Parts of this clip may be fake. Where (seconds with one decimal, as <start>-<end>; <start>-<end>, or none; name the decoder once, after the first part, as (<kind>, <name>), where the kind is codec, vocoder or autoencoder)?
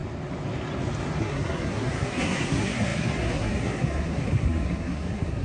1.2-5.4 (codec, SNAC)